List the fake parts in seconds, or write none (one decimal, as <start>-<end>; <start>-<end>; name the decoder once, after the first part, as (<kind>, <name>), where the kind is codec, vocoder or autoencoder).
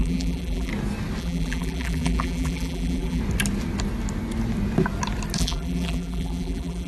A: 0.0-0.7 (vocoder, BigVGAN v2); 1.2-3.2; 5.4-6.9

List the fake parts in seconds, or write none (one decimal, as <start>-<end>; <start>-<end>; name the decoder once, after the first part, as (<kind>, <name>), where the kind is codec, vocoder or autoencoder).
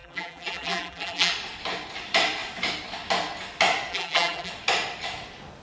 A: 0.0-1.3 (vocoder, BigVGAN v2); 3.9-4.5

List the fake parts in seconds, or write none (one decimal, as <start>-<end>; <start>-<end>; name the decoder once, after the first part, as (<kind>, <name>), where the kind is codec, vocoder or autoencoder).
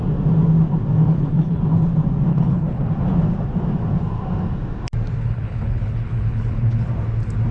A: 1.0-1.6 (codec, HILCodec); 2.3-2.9; 5.2-6.9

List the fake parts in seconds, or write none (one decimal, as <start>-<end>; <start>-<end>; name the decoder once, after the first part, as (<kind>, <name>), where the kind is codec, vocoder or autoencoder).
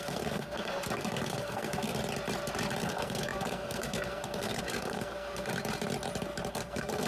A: 0.0-2.0 (codec, SNAC); 2.8-5.5; 6.5-7.1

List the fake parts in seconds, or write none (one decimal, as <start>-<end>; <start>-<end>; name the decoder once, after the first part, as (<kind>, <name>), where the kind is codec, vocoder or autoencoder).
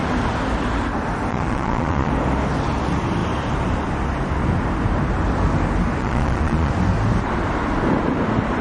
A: 1.3-2.1 (vocoder, Vocos); 6.0-6.7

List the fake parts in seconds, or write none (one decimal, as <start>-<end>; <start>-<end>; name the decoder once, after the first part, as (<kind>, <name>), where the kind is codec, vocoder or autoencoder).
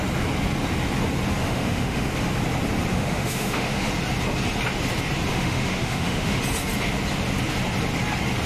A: 1.4-2.1 (autoencoder, DAC-VAE); 2.9-3.9; 5.3-6.4